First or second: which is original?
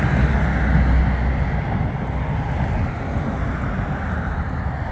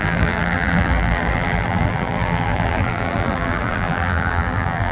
first